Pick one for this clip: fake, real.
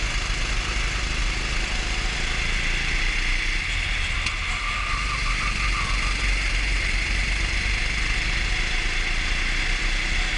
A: real